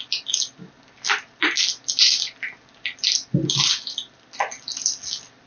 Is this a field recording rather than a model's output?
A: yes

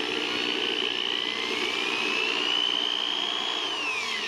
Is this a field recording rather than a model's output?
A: yes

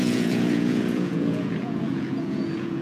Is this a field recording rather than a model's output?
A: no